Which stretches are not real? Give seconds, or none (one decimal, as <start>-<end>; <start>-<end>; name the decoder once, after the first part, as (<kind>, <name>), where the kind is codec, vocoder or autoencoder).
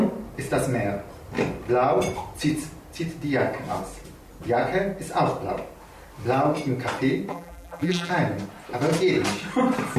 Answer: 7.3-8.1 (vocoder, BigVGAN v2)